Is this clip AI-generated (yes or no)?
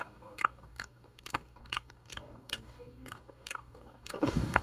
yes